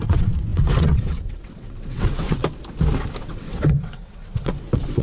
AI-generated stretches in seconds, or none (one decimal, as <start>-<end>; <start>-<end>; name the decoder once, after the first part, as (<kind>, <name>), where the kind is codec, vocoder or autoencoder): 0.0-2.4 (vocoder, WaveNeXt); 3.2-5.0